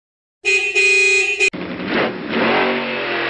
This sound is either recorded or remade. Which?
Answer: recorded